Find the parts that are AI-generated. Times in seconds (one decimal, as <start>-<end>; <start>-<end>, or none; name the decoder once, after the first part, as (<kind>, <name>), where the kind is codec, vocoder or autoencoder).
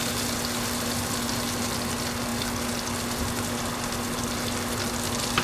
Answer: none